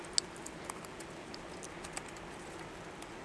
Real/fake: real